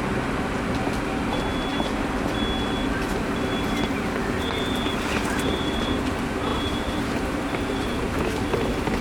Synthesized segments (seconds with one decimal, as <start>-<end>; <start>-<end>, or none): 3.1-5.7; 6.5-8.2

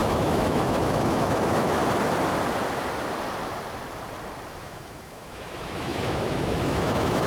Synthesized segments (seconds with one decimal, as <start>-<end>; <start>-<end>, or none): 0.0-1.8; 4.5-7.3

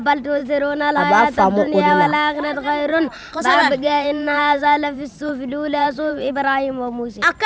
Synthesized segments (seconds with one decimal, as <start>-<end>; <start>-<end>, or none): 2.9-5.3; 5.8-6.3

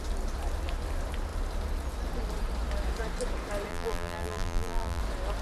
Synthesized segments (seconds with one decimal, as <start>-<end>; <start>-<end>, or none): 3.7-5.0

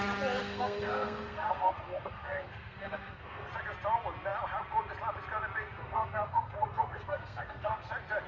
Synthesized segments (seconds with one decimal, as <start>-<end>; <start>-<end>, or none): 0.4-3.5; 5.8-7.9

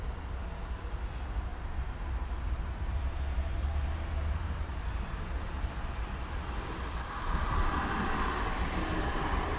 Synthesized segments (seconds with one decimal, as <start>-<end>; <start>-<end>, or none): 1.5-4.9

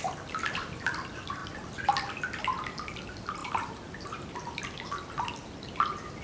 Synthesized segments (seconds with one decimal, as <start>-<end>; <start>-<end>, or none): 3.4-4.6